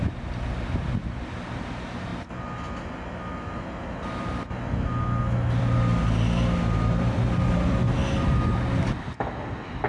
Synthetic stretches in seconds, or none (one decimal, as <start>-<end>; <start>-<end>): none